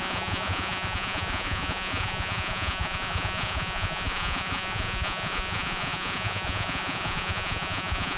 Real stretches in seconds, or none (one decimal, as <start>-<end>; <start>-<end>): none